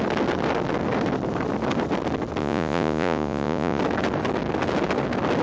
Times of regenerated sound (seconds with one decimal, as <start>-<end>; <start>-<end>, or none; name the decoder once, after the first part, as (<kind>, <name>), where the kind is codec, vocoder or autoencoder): 2.4-3.8 (vocoder, Vocos)